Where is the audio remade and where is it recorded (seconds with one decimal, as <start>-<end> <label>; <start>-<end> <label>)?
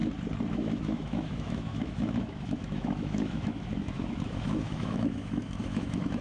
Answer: 0.0-0.5 recorded; 0.5-6.2 remade